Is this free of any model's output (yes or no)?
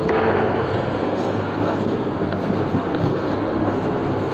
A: no